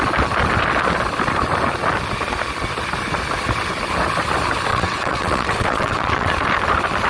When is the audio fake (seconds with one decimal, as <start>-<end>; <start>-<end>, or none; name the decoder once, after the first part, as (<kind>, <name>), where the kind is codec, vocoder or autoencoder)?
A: 4.7-6.3 (vocoder, WaveNeXt)